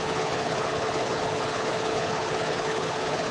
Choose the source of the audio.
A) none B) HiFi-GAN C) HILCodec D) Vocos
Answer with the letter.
C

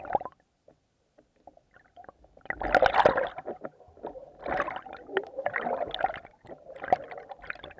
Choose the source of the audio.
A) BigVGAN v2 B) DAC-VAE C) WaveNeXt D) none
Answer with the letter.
D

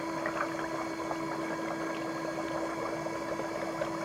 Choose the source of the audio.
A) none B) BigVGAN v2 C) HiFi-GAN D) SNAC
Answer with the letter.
A